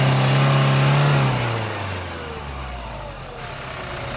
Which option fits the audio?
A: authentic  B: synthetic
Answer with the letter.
A